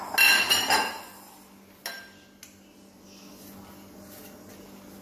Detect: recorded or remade recorded